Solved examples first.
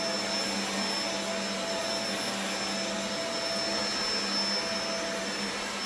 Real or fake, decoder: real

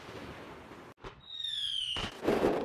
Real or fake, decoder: real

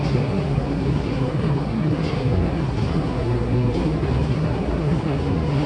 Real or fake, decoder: fake, codec, SNAC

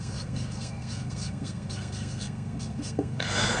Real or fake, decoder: fake, codec, SNAC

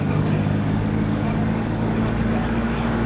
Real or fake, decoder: fake, codec, DAC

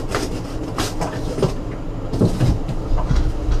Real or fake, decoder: real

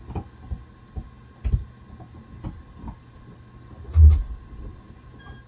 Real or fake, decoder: real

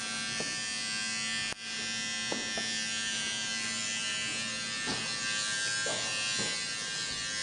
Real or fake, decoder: real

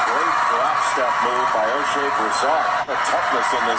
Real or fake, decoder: real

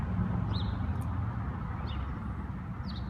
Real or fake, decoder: real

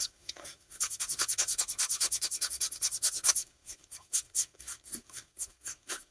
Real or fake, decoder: fake, codec, SNAC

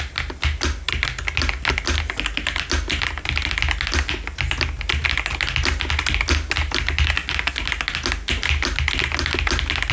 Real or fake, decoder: real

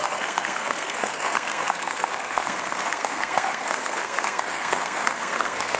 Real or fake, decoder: fake, codec, SNAC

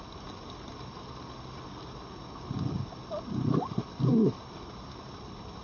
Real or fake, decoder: real